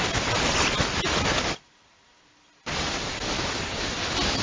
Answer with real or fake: real